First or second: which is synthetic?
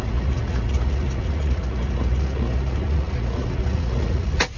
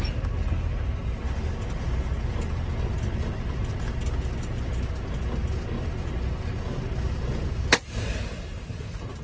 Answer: first